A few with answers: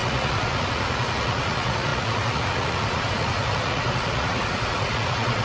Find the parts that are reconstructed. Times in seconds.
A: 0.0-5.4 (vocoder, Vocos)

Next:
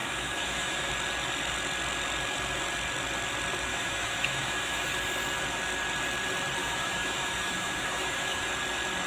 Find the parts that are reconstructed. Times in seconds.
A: 0.0-0.9 (autoencoder, DAC-VAE); 3.7-4.9; 6.6-8.5